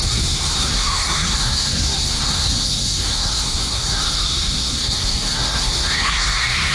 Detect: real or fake fake